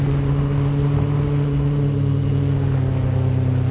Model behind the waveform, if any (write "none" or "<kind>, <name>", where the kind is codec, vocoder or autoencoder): none